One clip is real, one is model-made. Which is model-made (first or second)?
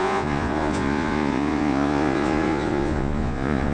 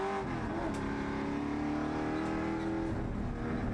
first